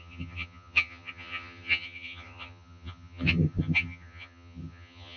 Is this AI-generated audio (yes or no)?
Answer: yes